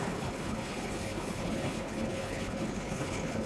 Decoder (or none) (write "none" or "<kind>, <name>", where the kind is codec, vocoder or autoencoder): codec, HILCodec